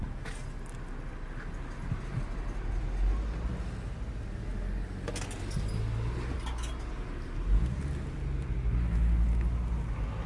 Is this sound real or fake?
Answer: real